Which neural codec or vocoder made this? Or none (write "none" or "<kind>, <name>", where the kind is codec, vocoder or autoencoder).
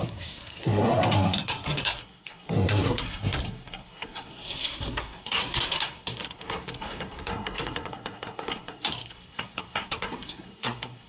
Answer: codec, SNAC